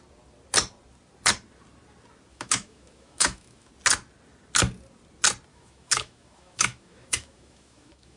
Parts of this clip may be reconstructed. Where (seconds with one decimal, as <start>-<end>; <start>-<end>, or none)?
2.3-3.7; 5.5-8.2